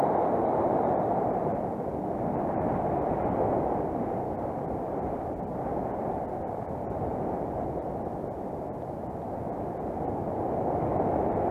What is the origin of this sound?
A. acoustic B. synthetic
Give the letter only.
A